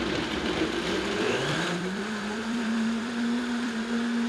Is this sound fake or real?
fake